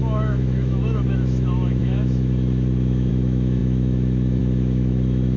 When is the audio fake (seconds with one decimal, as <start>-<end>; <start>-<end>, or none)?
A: 0.0-5.4